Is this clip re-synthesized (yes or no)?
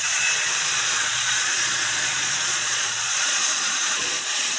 yes